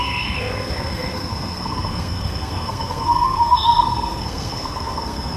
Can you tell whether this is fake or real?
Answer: fake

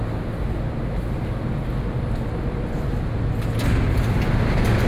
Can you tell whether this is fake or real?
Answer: real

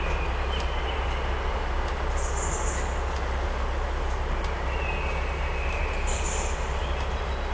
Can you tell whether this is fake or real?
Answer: real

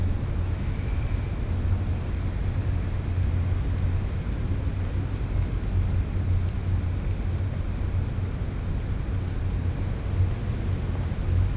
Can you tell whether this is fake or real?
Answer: real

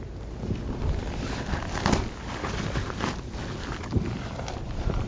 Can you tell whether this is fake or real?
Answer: real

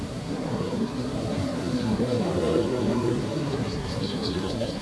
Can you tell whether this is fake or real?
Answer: fake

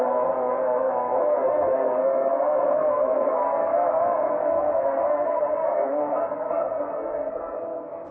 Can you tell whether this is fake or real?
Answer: fake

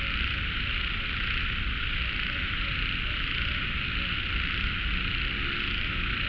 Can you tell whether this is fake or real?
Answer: real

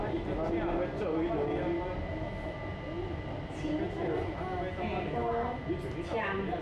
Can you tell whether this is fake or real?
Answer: real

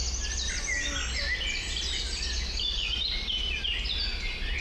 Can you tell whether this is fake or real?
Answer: real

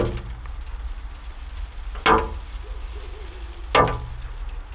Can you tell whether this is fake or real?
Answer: real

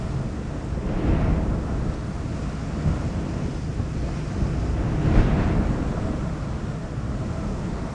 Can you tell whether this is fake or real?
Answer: real